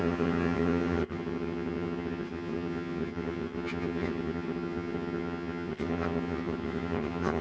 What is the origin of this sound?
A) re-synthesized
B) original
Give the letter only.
A